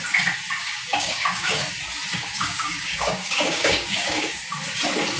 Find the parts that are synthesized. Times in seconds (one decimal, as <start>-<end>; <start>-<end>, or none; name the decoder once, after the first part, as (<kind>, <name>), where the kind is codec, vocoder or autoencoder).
0.6-1.6 (codec, DAC); 2.1-4.4

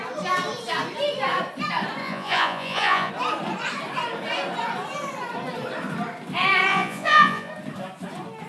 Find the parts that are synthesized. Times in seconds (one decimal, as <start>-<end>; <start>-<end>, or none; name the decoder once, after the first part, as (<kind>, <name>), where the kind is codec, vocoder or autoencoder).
2.0-3.1 (vocoder, Vocos); 6.7-7.5